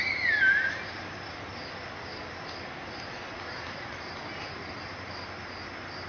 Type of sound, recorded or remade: recorded